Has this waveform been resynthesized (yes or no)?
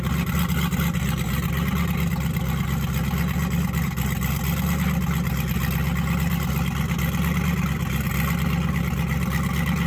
no